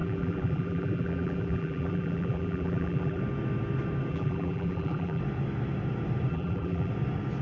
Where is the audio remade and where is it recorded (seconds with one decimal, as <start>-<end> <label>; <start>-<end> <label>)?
0.0-3.2 remade; 3.2-4.1 recorded; 4.1-5.2 remade; 5.2-6.3 recorded; 6.3-6.9 remade; 6.9-7.4 recorded